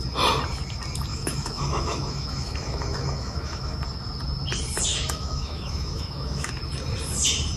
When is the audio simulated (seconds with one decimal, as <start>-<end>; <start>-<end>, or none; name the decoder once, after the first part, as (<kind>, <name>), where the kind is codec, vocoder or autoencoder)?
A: 1.1-3.8 (autoencoder, DAC-VAE); 4.9-6.5